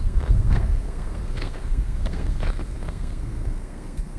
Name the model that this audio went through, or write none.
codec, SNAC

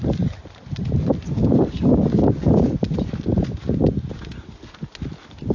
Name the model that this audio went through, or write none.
none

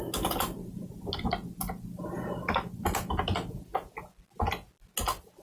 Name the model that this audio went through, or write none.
none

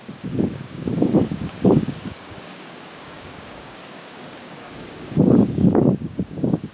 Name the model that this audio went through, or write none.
codec, DAC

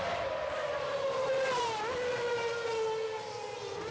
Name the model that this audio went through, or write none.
none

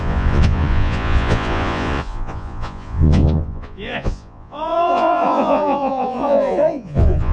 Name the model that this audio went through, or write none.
vocoder, Vocos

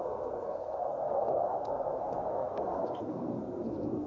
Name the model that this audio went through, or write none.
codec, SNAC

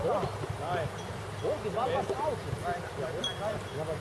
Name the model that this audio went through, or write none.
none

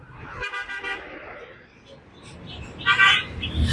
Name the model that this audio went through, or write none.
none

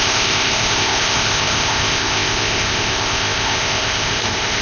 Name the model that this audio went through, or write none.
codec, ZipCodec